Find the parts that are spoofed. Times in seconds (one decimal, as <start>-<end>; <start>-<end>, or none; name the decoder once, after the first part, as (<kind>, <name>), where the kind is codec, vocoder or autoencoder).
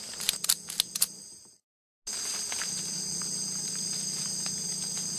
none